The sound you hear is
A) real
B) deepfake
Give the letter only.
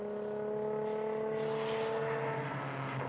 A